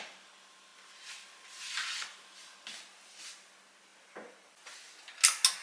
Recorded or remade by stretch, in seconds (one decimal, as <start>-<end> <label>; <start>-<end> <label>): 0.0-5.6 recorded